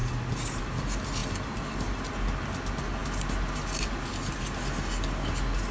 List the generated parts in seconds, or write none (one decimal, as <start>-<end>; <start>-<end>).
none